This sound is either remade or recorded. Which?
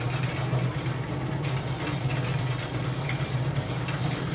recorded